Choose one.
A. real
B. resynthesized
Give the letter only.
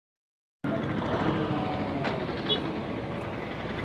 A